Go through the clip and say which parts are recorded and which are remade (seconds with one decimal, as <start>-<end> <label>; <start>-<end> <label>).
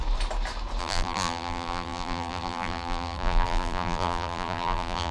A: 0.0-0.8 recorded; 0.8-5.1 remade